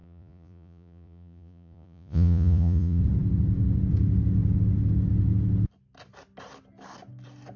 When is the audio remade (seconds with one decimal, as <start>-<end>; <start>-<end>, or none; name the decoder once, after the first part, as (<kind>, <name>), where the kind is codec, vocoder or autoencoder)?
0.0-3.0 (vocoder, Vocos)